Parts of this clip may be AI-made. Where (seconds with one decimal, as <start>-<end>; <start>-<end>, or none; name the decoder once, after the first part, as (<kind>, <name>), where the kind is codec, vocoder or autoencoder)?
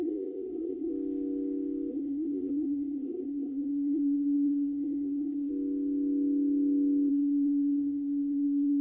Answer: 0.0-0.9 (codec, SNAC); 1.9-5.5; 7.1-8.8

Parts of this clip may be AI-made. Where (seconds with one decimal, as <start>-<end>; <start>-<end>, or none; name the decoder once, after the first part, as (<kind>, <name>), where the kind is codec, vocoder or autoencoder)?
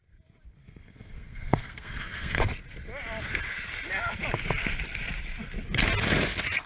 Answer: 0.6-2.4 (codec, SNAC)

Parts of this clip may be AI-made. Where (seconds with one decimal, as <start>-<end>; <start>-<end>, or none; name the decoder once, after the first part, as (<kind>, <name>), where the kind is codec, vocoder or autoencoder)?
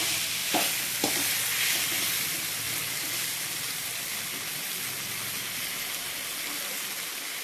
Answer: none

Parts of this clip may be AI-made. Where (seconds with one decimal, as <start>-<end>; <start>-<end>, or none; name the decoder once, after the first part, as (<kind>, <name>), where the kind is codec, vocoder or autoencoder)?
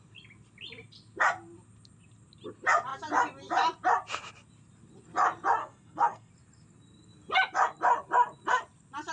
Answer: 5.6-6.3 (codec, SNAC)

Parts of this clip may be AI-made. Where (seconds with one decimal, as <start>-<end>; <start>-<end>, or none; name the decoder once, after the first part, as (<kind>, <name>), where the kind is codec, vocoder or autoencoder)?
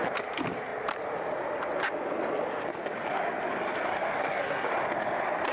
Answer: 4.2-4.7 (codec, SNAC)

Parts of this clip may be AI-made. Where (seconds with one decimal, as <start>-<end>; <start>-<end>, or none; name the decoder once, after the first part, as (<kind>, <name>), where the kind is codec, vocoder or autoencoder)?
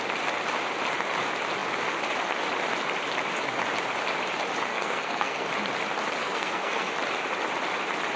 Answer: 4.7-5.5 (codec, SNAC); 6.2-6.9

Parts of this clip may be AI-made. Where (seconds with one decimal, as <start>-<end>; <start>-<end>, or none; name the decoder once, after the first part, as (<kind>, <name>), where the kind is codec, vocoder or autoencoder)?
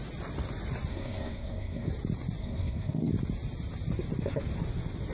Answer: 0.9-1.9 (codec, SNAC); 2.4-3.1